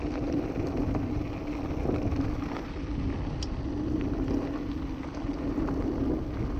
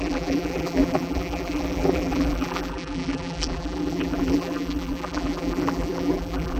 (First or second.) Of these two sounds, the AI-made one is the second